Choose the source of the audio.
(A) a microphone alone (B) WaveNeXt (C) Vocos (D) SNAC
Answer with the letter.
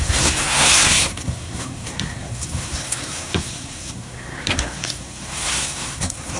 D